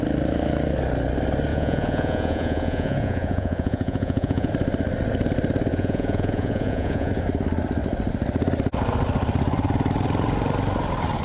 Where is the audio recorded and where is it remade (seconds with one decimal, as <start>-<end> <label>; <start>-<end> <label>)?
0.0-1.5 recorded; 1.5-4.5 remade; 4.5-5.7 recorded; 5.7-7.1 remade; 7.1-11.2 recorded